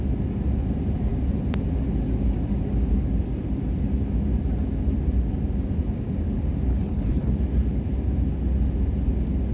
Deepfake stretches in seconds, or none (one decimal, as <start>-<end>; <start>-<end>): 6.7-7.3